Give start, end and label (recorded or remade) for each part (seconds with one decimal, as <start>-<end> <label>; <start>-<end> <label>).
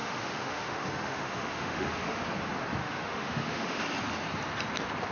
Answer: 0.0-2.2 remade; 2.2-2.8 recorded; 2.8-3.8 remade; 3.8-5.1 recorded